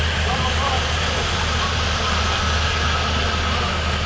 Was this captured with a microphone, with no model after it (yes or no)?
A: yes